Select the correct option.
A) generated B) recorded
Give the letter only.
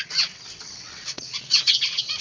A